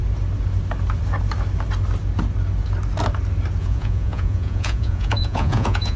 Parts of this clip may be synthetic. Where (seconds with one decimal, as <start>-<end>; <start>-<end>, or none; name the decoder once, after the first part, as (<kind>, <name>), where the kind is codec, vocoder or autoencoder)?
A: 3.6-6.0 (vocoder, Vocos)